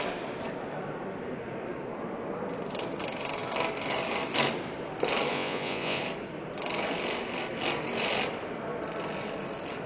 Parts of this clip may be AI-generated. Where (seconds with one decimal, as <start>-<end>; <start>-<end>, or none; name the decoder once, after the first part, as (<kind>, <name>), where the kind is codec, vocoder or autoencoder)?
5.3-6.0 (vocoder, Vocos)

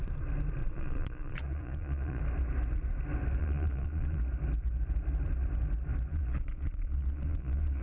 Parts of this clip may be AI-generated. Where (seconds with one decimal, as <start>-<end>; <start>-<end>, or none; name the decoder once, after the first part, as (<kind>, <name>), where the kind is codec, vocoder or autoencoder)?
0.6-2.2 (vocoder, Vocos); 3.4-4.2; 6.1-7.8

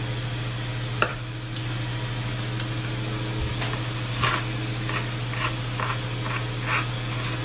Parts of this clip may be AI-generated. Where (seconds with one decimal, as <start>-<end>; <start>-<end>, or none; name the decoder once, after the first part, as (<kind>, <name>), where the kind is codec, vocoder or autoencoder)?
none

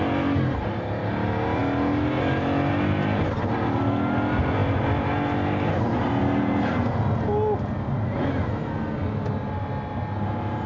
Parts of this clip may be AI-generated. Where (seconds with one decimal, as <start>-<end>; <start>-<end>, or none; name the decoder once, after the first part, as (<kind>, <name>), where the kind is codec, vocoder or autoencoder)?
none

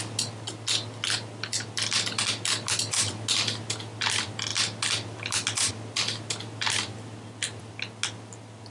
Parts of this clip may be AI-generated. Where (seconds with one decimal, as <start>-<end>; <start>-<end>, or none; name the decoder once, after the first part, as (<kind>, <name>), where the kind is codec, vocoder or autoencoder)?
none